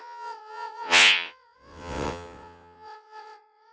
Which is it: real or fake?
fake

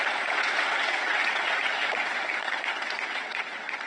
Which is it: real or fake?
fake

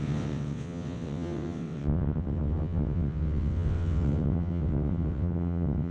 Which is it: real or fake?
fake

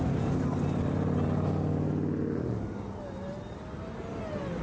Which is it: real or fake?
real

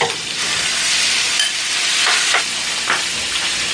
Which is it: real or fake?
real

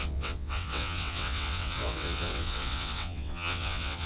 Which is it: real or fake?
fake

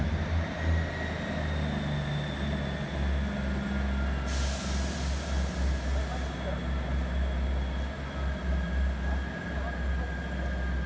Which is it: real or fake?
real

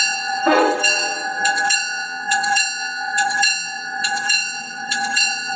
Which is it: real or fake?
fake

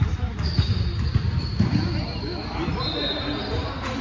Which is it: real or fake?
real